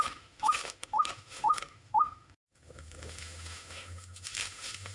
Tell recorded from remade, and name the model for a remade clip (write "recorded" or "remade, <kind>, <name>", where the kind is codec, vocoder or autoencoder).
remade, autoencoder, DAC-VAE